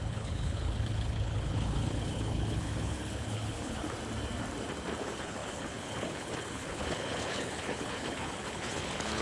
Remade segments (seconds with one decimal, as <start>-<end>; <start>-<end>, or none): 0.0-3.8; 5.0-9.2

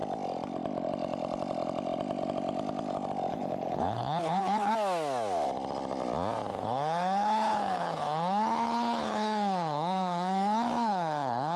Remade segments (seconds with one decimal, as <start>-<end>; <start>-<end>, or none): 3.3-4.7; 6.5-11.6

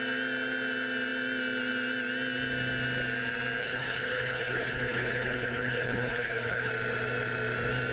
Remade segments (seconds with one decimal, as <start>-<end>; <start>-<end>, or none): 3.6-6.7

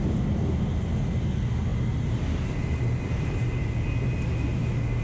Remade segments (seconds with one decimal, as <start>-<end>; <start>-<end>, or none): none

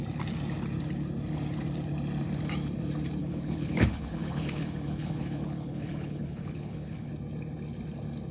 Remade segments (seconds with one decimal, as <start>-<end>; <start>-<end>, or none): 3.2-7.1

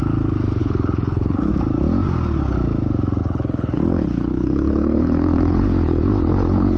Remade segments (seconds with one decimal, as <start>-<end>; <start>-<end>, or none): 0.6-1.5; 3.2-6.8